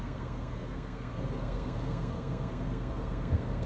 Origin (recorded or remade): remade